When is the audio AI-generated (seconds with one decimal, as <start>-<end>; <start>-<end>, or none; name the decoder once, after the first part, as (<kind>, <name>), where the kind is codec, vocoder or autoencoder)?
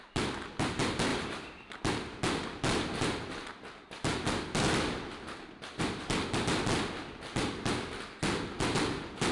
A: none